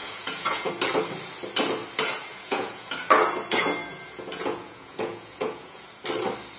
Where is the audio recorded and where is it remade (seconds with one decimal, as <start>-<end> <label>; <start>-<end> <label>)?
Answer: 0.0-0.7 remade; 0.7-2.3 recorded; 2.3-2.9 remade; 2.9-3.8 recorded; 3.8-5.8 remade; 5.8-6.6 recorded